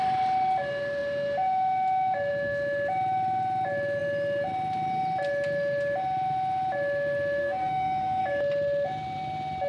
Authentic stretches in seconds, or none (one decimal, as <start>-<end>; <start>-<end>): 0.0-7.4; 8.2-9.7